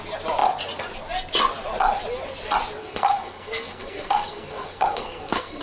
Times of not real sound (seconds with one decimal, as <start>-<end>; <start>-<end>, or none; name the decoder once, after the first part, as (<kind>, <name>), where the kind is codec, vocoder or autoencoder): 2.8-5.6 (codec, SNAC)